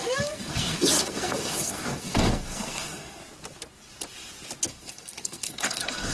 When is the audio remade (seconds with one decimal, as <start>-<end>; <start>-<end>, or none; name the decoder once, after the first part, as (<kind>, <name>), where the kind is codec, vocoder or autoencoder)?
0.0-3.2 (codec, SNAC); 4.7-6.1